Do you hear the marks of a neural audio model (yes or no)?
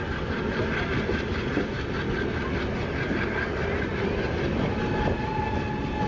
no